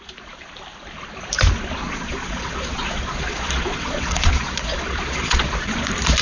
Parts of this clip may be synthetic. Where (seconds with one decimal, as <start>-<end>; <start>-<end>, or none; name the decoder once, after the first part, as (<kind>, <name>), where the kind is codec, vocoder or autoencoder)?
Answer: 1.8-5.5 (vocoder, Vocos)